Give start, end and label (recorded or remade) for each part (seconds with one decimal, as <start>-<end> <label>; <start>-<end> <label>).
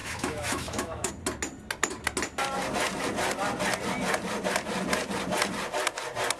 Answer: 0.0-1.1 remade; 1.1-6.4 recorded